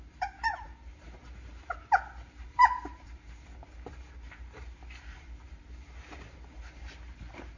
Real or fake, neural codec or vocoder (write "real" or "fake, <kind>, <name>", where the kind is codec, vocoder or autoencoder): fake, vocoder, BigVGAN v2